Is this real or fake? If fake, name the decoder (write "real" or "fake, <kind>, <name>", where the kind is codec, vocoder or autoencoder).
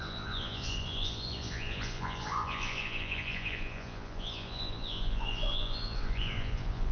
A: fake, vocoder, Vocos